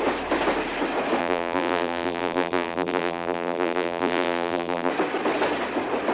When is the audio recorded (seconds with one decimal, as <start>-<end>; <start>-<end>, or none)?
0.0-1.2; 4.9-6.1